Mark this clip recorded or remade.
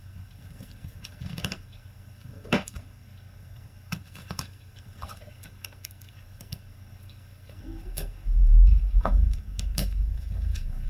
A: remade